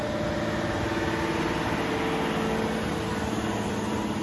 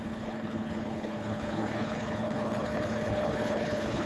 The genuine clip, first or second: first